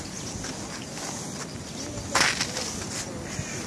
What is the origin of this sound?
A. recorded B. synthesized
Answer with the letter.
A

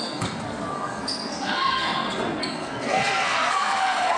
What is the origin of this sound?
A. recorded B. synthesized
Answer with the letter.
B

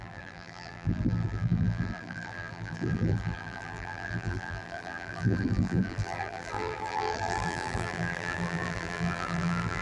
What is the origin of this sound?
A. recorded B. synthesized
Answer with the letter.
B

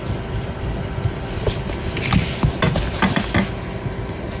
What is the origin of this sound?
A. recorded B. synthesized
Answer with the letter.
A